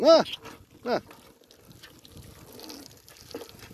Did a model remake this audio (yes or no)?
no